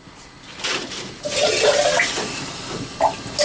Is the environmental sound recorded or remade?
recorded